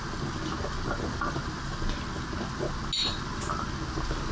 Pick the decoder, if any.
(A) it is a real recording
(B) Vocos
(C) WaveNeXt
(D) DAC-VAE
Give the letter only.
A